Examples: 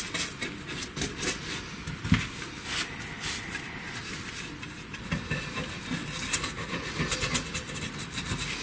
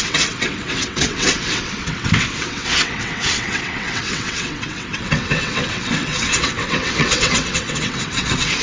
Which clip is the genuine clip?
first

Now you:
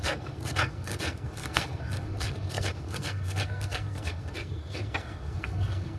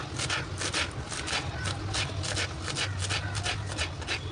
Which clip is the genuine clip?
second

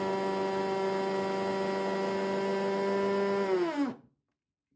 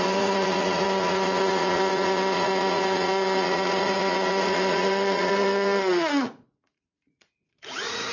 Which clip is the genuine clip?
first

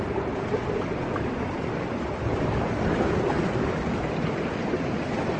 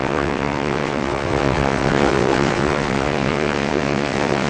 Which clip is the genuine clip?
first